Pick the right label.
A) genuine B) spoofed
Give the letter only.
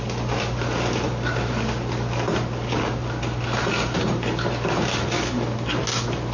A